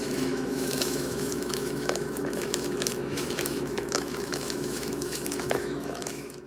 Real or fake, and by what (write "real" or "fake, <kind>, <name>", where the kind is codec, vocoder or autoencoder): fake, autoencoder, DAC-VAE